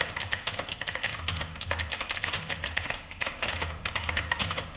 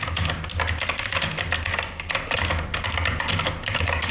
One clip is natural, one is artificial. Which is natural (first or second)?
second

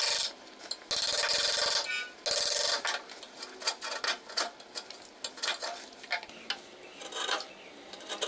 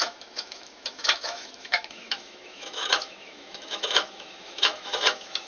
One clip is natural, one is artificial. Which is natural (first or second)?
first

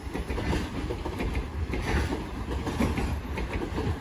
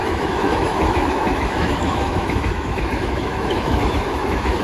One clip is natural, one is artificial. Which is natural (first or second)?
first